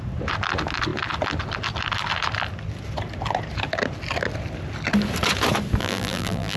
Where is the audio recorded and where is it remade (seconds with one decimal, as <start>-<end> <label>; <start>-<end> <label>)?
0.0-5.8 recorded; 5.8-6.6 remade